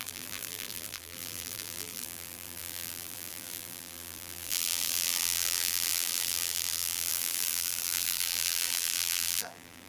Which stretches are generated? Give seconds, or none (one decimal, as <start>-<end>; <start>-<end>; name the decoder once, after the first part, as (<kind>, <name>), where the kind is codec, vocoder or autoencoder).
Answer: 0.0-9.9 (vocoder, BigVGAN v2)